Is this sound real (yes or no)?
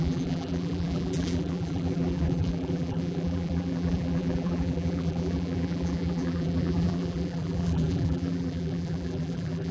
no